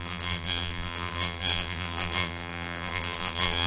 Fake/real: fake